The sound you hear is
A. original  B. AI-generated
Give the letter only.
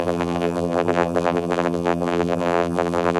B